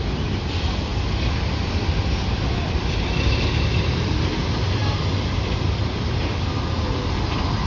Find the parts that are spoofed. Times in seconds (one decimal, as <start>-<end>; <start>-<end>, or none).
none